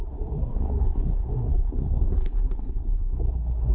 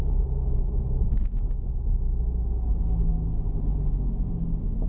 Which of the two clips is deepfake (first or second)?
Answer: first